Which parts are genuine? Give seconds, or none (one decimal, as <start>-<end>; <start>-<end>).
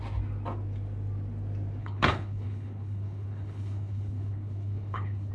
0.0-1.8